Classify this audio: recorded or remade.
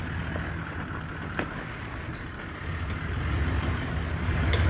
recorded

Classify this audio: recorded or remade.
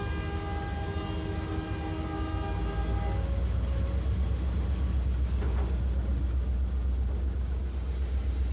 recorded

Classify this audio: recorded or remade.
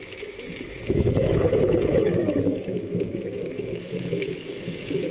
remade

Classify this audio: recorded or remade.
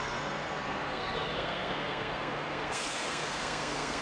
remade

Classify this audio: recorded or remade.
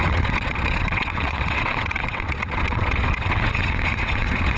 remade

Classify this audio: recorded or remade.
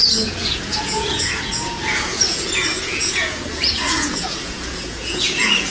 remade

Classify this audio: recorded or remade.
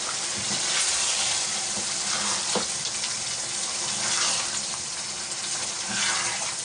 remade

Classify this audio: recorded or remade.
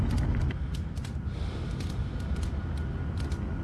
recorded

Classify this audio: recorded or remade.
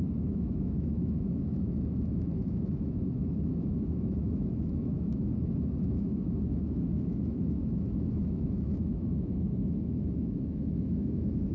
remade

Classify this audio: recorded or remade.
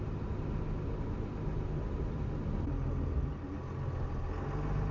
recorded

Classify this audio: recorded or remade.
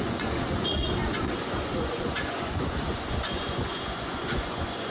remade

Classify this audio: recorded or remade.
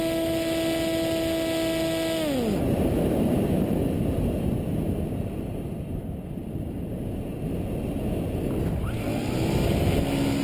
recorded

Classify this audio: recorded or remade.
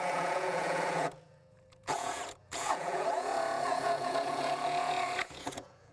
remade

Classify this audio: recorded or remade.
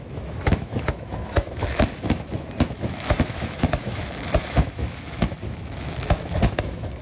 remade